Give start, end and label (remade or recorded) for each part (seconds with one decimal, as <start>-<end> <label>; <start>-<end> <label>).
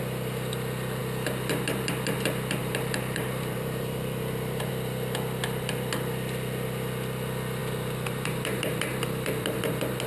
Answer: 0.0-2.6 recorded; 2.6-4.7 remade; 4.7-7.6 recorded; 7.6-9.7 remade; 9.7-10.1 recorded